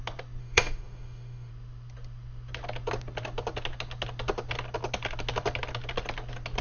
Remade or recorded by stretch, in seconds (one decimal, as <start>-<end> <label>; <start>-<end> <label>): 0.0-0.4 recorded; 0.4-1.5 remade; 1.5-6.6 recorded